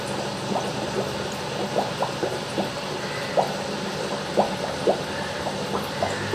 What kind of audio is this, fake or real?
real